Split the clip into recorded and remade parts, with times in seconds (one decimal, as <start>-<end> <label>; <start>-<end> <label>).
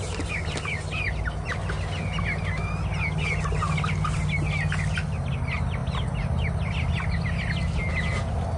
0.0-8.6 recorded